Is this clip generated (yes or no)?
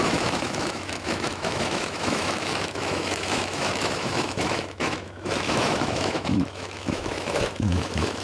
yes